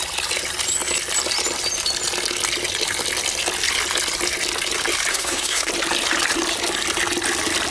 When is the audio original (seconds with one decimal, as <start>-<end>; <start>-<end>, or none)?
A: 0.0-5.1; 5.7-7.7